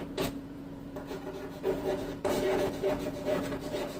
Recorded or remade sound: remade